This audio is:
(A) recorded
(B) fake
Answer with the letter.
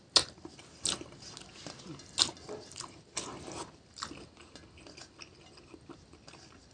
A